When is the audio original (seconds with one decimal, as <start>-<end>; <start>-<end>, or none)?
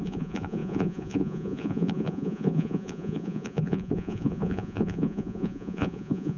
none